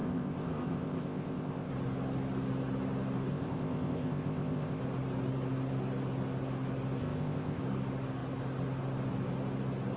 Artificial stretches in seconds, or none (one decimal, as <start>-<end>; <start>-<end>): 0.0-1.7; 3.3-4.8; 7.0-7.6